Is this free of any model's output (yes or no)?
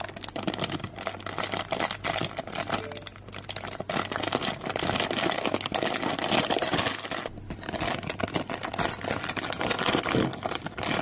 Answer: yes